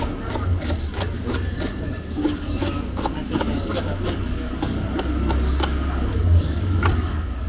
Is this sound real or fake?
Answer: fake